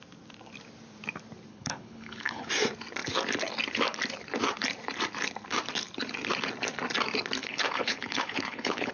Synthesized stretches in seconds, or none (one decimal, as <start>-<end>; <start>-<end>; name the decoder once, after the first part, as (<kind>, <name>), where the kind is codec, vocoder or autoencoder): 1.5-2.5 (codec, HILCodec); 7.4-8.9